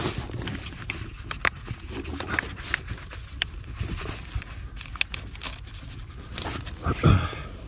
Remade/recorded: recorded